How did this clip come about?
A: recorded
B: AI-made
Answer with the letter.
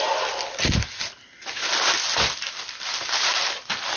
A